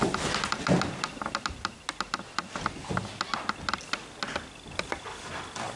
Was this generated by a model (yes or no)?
no